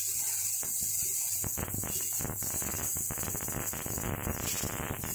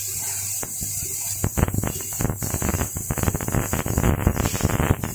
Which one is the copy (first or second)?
second